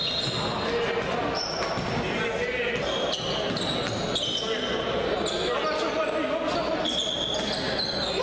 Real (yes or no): yes